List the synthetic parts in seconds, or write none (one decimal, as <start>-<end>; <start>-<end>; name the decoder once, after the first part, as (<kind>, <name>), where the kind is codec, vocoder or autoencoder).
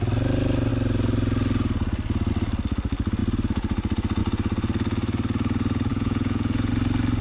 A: 5.9-6.7 (vocoder, Vocos)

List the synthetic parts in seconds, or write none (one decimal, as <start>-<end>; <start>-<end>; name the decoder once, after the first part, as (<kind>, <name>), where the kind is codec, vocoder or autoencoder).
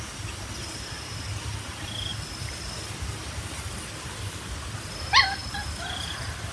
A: none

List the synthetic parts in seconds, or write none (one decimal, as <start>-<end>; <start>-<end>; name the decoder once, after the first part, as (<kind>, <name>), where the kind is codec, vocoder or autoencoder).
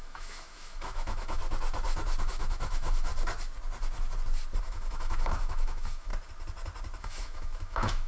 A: 0.0-1.4 (autoencoder, DAC-VAE); 2.2-3.1; 4.6-6.1; 7.0-8.1